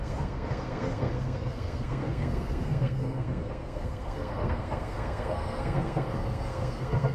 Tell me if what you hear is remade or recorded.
remade